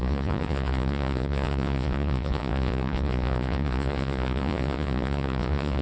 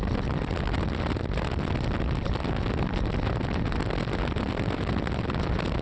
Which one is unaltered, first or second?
second